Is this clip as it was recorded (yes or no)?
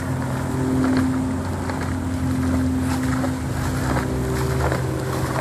yes